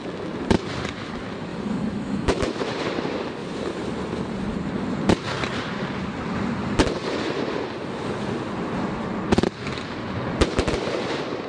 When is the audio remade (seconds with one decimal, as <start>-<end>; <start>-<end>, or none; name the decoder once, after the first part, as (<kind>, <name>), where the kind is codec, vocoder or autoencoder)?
1.5-2.5 (autoencoder, DAC-VAE)